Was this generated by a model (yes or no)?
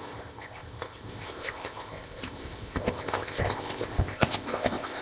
yes